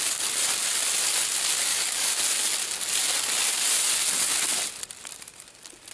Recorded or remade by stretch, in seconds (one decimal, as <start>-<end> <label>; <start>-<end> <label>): 0.0-1.7 recorded; 1.7-2.2 remade; 2.2-5.9 recorded